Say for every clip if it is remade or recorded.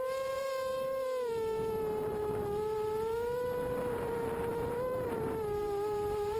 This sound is remade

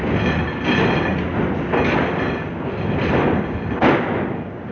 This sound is recorded